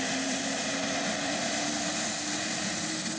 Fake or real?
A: fake